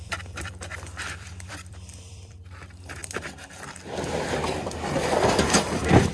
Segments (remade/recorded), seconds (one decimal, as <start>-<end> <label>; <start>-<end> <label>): 0.0-3.0 remade; 3.0-4.0 recorded; 4.0-6.1 remade